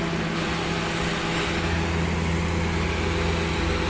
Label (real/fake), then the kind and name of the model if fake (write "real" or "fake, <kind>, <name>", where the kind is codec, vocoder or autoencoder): real